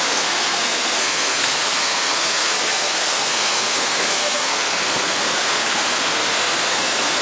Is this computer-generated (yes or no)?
yes